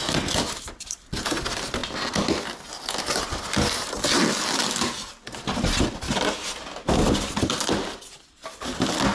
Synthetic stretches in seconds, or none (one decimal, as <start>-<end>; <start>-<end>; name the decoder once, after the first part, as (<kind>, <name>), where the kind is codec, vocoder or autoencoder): none